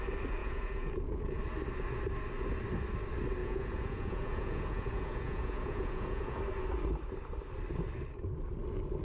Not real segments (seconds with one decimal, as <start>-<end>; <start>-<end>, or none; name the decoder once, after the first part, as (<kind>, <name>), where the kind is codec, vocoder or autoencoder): 0.4-1.4 (vocoder, Vocos); 3.4-6.4